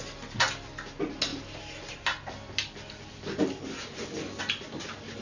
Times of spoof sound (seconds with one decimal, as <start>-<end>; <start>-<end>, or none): none